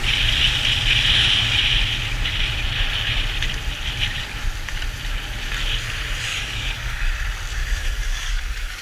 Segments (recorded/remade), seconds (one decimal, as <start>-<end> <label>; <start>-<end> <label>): 0.0-6.3 recorded; 6.3-7.1 remade; 7.1-7.6 recorded; 7.6-8.8 remade